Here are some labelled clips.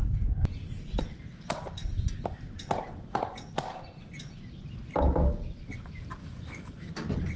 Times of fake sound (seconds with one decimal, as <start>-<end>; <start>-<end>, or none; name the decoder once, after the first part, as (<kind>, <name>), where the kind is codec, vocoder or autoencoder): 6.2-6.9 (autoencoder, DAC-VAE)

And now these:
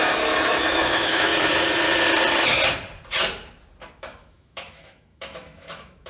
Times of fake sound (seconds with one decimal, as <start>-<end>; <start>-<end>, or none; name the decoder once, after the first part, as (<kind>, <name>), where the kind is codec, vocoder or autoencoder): 0.0-1.3 (autoencoder, DAC-VAE); 4.0-6.1

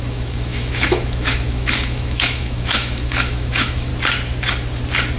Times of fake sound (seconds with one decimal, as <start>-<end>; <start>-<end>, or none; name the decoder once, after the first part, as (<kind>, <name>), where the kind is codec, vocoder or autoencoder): 0.0-3.9 (autoencoder, DAC-VAE)

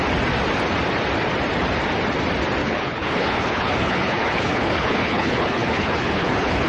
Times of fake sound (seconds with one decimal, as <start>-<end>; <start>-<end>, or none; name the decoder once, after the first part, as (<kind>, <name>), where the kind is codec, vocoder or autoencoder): 2.6-6.7 (codec, HILCodec)